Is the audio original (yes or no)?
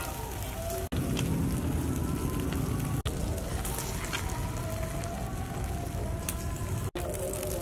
yes